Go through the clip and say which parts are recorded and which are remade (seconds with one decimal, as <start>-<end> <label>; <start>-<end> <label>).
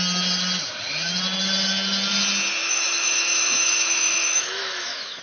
0.0-2.6 recorded; 2.6-5.2 remade